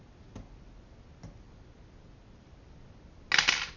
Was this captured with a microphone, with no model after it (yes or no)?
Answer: yes